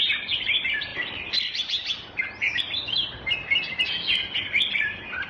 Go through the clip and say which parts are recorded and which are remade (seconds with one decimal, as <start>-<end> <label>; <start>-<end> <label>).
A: 0.0-5.3 recorded